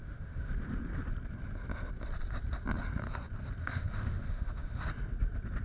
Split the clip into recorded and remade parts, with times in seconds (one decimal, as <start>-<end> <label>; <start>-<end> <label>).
0.0-0.5 remade; 0.5-3.6 recorded; 3.6-4.8 remade; 4.8-5.6 recorded